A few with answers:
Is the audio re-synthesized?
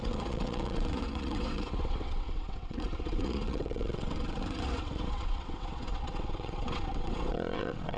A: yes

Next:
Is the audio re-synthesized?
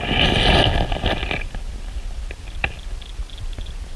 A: no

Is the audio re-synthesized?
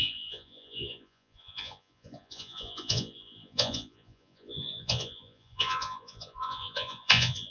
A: yes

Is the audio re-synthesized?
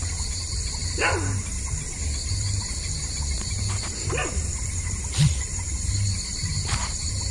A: yes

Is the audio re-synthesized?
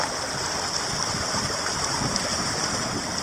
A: yes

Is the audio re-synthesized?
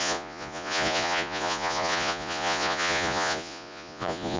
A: yes